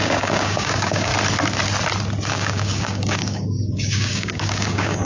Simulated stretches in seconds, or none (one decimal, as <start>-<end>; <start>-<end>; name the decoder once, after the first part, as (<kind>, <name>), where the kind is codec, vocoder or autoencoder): 0.0-1.1 (codec, DAC); 2.3-5.0